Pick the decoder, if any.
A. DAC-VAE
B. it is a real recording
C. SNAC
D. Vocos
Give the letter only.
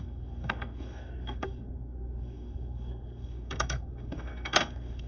C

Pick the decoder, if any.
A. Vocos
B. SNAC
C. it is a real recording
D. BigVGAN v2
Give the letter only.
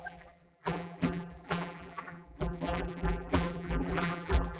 D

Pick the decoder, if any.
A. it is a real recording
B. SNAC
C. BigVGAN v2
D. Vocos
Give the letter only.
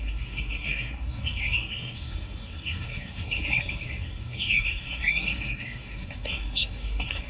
B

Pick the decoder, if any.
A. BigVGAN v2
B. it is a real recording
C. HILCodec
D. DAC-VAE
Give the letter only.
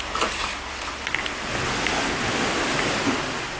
B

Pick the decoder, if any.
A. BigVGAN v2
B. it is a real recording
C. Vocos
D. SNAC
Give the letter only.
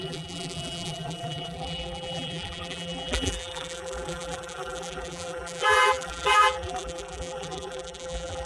A